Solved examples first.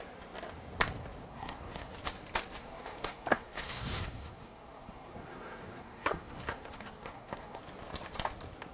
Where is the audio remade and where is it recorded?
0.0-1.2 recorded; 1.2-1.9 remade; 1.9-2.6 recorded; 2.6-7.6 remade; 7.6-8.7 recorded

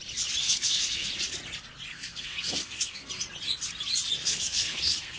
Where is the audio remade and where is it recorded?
0.0-0.4 recorded; 0.4-1.1 remade; 1.1-1.9 recorded; 1.9-3.1 remade; 3.1-4.2 recorded; 4.2-5.2 remade